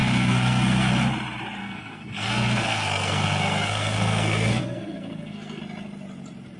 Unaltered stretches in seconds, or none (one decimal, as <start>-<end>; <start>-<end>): 0.9-1.6; 5.6-6.6